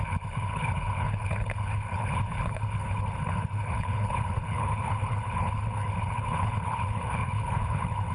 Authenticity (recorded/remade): remade